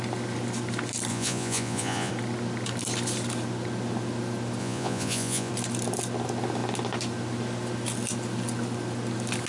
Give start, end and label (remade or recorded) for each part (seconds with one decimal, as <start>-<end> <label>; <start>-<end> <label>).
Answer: 0.0-1.1 recorded; 1.1-2.1 remade; 2.1-4.6 recorded; 4.6-5.5 remade; 5.5-9.5 recorded